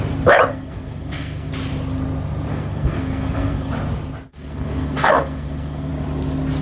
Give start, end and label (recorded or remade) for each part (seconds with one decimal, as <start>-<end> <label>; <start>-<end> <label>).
0.0-0.5 recorded; 0.5-1.5 remade; 1.5-2.5 recorded; 2.5-3.7 remade; 3.7-4.3 recorded; 4.3-5.9 remade; 5.9-6.6 recorded